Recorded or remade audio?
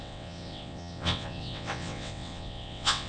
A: remade